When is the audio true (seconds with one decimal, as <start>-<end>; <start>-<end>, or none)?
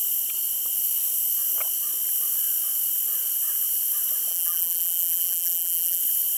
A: 0.0-4.3; 6.0-6.4